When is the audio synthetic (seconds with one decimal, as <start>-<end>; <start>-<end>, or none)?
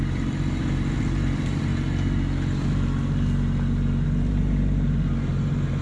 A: 0.0-1.7; 4.3-5.8